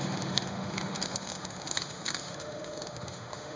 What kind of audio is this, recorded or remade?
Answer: remade